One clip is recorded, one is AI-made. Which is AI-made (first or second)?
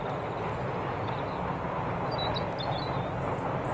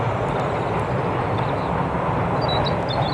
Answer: second